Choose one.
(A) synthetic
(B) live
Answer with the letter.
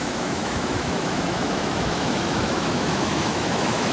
A